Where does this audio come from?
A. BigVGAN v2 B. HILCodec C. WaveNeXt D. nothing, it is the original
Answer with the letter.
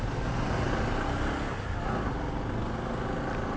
D